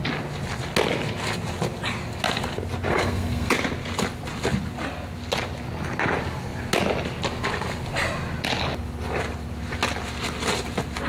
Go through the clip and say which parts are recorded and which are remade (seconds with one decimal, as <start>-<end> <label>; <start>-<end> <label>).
0.0-2.9 recorded; 2.9-3.5 remade; 3.5-11.1 recorded